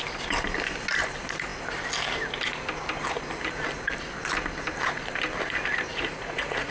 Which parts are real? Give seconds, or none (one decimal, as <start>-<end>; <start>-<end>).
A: 0.0-5.9